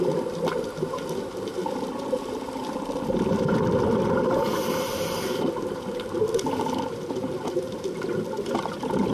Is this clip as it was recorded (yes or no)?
yes